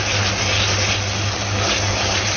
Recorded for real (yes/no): yes